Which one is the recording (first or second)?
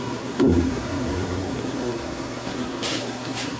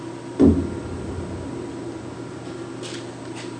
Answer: second